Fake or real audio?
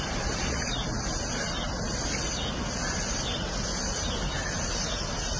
real